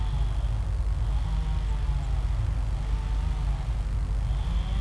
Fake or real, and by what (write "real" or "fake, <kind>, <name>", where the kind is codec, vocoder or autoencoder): real